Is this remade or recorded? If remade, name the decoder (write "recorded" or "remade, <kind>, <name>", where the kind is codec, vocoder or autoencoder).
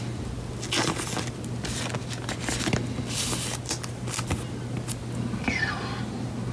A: recorded